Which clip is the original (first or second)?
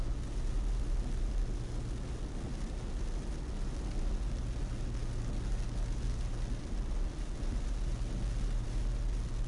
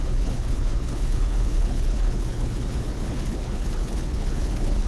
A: first